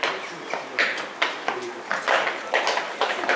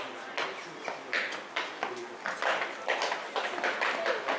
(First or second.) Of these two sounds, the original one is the second